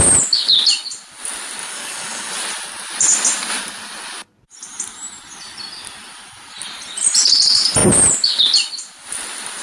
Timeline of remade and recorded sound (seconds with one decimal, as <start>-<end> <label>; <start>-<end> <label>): 0.0-1.6 recorded; 1.6-2.3 remade; 2.3-9.6 recorded